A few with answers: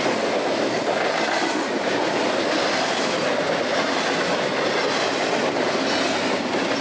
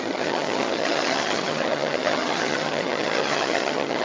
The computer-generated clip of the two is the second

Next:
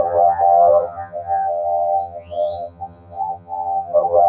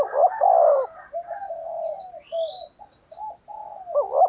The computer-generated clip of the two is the first